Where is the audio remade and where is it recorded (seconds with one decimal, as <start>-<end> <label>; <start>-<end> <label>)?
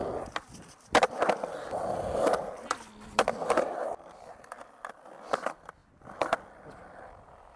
0.0-7.6 recorded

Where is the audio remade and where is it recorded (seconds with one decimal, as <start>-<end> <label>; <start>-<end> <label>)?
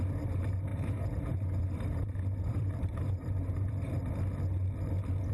0.0-0.7 recorded; 0.7-3.9 remade; 3.9-5.3 recorded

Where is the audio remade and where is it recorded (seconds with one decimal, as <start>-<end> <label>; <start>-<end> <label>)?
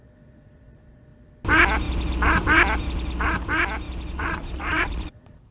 0.0-1.1 remade; 1.1-4.1 recorded; 4.1-5.5 remade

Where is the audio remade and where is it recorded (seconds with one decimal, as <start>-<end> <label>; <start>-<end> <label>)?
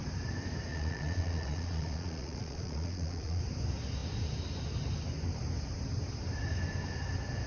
0.0-0.7 recorded; 0.7-3.4 remade; 3.4-7.5 recorded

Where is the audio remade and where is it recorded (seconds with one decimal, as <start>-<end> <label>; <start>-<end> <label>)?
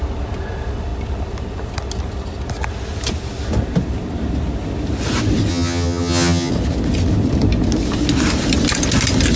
0.0-5.5 recorded; 5.5-6.5 remade; 6.5-9.4 recorded